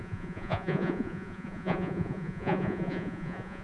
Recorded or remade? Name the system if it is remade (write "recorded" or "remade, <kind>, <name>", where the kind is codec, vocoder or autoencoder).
remade, vocoder, Vocos